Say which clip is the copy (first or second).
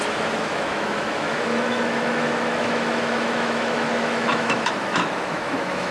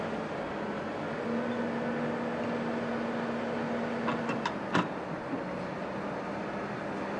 first